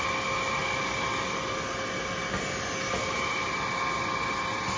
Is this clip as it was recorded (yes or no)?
yes